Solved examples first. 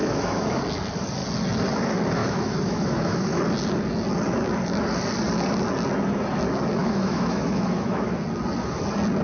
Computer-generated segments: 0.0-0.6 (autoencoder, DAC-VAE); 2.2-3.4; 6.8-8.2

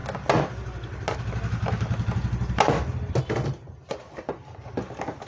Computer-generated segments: none

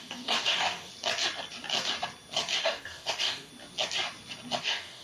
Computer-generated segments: 0.0-0.9 (codec, DAC); 2.6-3.5; 4.6-5.0

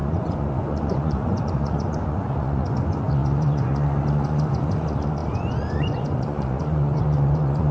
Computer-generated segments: 0.0-7.7 (vocoder, Vocos)

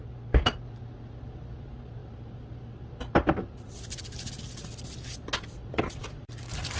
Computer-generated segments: none